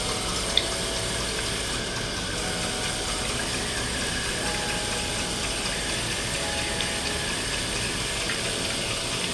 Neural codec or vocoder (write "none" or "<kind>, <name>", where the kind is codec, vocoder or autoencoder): none